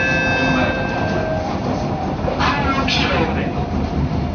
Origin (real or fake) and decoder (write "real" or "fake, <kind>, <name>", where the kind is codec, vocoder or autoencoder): real